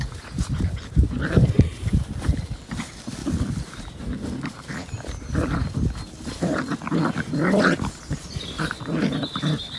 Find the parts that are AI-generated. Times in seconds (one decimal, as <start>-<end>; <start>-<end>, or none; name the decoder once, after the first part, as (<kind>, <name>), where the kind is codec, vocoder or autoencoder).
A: none